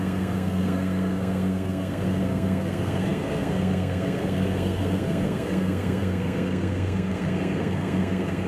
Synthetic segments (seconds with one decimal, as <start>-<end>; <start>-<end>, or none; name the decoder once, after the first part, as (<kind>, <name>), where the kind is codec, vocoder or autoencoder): 0.0-8.5 (codec, SNAC)